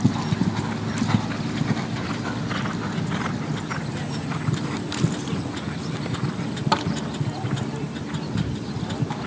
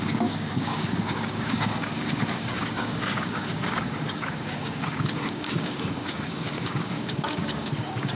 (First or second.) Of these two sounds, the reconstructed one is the second